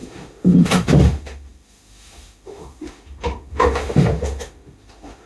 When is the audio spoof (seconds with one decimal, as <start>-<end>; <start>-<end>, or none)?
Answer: 0.0-5.3